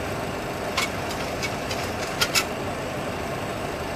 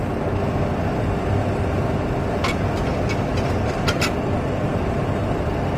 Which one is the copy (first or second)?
first